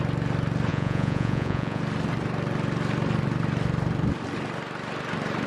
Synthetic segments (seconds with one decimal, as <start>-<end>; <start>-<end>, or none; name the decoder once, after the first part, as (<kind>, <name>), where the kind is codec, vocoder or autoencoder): 0.7-1.8 (vocoder, Vocos)